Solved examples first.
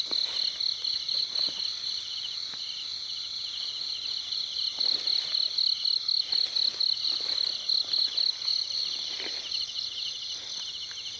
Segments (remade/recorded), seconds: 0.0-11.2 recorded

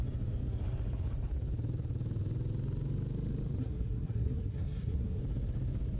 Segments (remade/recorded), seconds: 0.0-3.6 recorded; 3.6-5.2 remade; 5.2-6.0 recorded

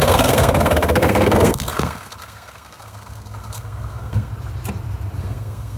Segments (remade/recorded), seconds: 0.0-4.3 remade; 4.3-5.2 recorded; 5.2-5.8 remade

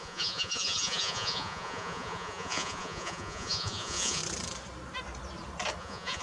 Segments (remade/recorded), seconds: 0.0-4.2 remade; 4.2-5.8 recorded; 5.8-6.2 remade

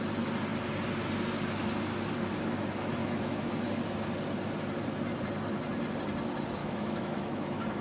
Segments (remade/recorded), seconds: 0.0-3.0 recorded; 3.0-3.5 remade; 3.5-6.6 recorded; 6.6-7.8 remade